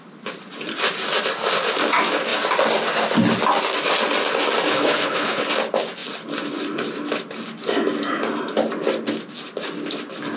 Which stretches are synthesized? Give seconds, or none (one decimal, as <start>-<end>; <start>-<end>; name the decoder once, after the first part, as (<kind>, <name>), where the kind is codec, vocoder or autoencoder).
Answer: 4.7-5.4 (codec, HILCodec)